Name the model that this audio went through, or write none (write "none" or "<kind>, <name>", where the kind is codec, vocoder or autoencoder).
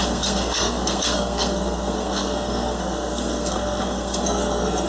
codec, SNAC